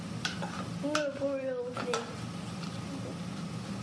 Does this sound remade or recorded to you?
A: recorded